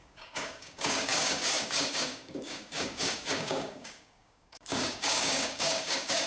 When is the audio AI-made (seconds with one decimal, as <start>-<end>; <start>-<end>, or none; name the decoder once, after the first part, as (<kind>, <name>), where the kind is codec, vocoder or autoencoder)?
0.0-6.3 (codec, DAC)